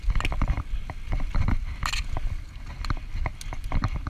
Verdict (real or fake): real